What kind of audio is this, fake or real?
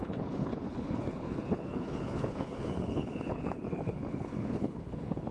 fake